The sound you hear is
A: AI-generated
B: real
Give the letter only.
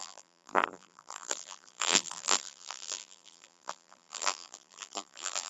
A